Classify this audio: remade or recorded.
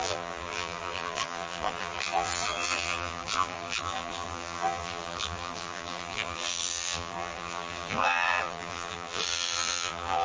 remade